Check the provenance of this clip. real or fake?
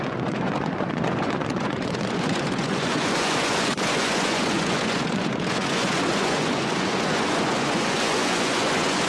fake